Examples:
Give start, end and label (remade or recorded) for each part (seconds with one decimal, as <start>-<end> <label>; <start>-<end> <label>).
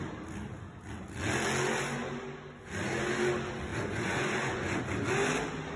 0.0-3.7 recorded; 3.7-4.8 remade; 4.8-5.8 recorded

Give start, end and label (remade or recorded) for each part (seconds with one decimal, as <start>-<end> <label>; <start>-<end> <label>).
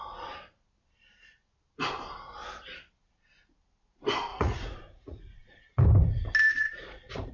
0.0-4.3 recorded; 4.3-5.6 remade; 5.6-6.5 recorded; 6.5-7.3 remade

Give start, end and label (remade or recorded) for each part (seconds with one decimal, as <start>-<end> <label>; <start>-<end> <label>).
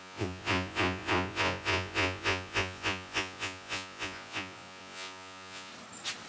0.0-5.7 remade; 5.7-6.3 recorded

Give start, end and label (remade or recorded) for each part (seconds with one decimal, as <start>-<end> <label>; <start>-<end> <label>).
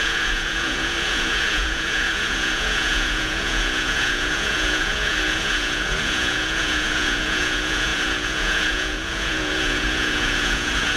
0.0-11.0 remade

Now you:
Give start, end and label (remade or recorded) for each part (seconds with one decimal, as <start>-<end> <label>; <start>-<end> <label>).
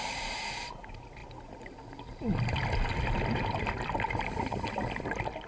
0.0-5.5 recorded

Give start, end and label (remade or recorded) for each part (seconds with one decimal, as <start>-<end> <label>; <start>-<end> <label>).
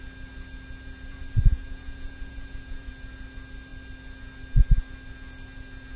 0.0-1.1 recorded; 1.1-2.9 remade; 2.9-6.0 recorded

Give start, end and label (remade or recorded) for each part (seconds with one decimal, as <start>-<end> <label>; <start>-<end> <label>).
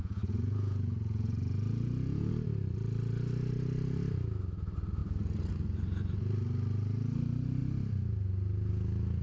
0.0-2.3 remade; 2.3-9.2 recorded